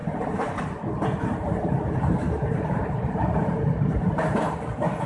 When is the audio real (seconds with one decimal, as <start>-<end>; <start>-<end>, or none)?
0.6-1.0; 3.6-5.1